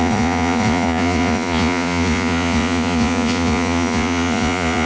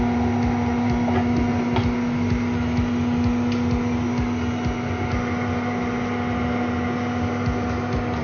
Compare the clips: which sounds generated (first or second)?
first